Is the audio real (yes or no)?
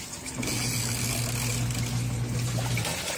yes